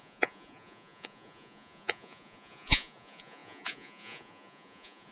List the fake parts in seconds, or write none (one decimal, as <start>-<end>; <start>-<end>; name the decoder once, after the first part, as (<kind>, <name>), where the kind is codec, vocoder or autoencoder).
0.0-5.1 (vocoder, Vocos)